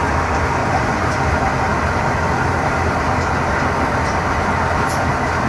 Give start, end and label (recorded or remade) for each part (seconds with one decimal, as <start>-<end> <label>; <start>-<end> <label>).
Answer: 0.0-0.6 recorded; 0.6-1.2 remade; 1.2-5.5 recorded